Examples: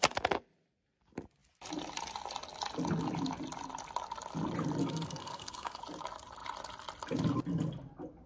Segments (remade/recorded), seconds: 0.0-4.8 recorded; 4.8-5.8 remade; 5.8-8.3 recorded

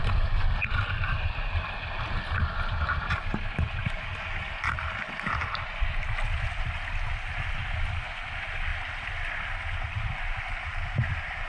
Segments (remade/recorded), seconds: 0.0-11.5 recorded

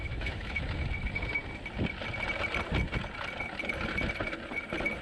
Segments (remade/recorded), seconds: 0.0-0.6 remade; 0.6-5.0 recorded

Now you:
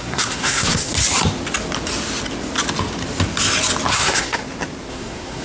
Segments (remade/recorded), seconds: 0.0-0.9 remade; 0.9-3.9 recorded; 3.9-4.4 remade; 4.4-4.9 recorded; 4.9-5.4 remade

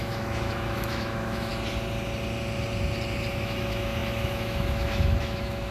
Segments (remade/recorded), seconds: 0.0-1.5 remade; 1.5-3.3 recorded; 3.3-5.7 remade